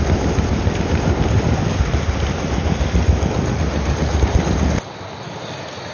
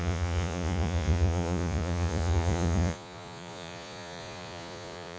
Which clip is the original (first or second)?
first